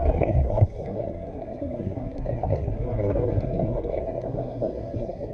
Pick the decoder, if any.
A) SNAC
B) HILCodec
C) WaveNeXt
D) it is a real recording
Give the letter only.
A